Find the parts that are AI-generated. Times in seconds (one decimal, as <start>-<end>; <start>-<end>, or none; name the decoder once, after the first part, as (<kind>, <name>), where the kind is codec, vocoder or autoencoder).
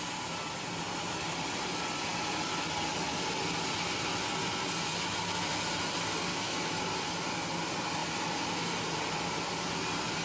6.3-6.8 (autoencoder, DAC-VAE)